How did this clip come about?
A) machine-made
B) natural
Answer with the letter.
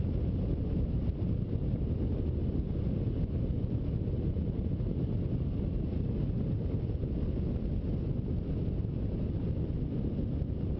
B